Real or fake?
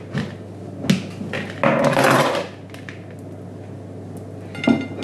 real